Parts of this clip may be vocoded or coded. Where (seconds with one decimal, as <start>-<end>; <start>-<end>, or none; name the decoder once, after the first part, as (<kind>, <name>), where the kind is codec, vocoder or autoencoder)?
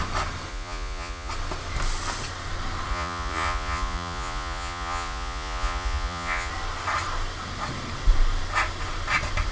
0.5-1.3 (vocoder, Vocos); 2.9-6.5